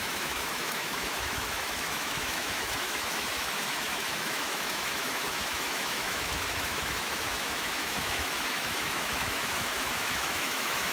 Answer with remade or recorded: remade